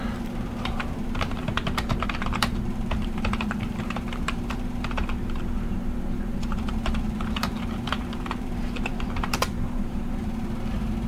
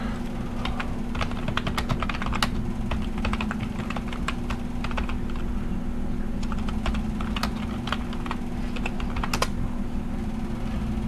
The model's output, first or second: first